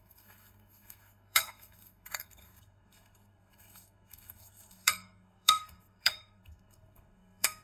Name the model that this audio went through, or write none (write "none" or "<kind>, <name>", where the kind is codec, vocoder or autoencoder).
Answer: codec, SNAC